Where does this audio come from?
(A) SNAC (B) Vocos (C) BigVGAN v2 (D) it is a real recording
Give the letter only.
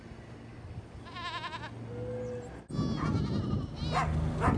D